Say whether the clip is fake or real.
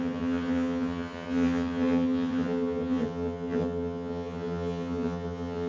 fake